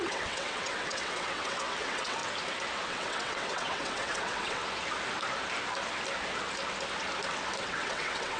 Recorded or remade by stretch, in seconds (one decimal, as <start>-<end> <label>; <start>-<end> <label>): 0.0-2.2 remade; 2.2-2.9 recorded; 2.9-4.6 remade; 4.6-7.6 recorded; 7.6-8.4 remade